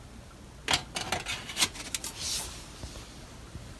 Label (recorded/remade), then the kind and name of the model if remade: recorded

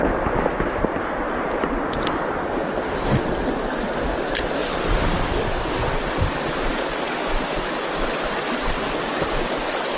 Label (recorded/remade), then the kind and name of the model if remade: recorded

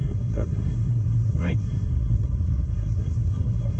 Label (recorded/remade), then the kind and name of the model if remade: remade, codec, SNAC